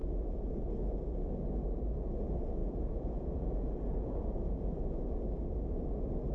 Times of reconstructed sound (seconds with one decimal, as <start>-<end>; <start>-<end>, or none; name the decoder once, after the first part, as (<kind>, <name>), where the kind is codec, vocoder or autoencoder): 0.0-0.5 (vocoder, Vocos); 2.6-5.0